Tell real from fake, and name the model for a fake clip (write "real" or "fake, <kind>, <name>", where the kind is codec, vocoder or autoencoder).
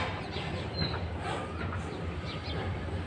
real